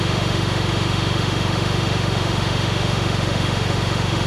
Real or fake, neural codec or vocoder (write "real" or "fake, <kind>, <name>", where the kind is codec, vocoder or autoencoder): fake, autoencoder, DAC-VAE